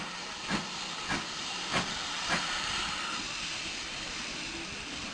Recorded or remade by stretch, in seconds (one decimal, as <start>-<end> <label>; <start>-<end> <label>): 0.0-5.1 remade